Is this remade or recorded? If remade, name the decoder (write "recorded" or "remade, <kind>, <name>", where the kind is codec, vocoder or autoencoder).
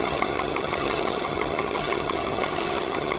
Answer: remade, vocoder, HiFi-GAN